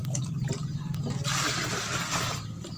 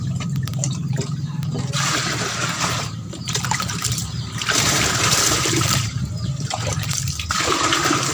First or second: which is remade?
second